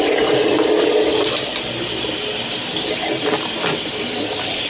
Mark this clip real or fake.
real